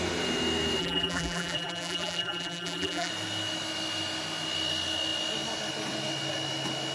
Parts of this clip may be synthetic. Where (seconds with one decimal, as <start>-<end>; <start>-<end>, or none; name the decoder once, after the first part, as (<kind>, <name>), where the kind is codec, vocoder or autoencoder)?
0.8-3.1 (vocoder, BigVGAN v2)